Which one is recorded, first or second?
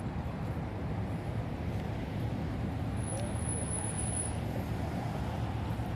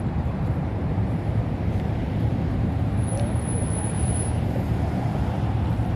first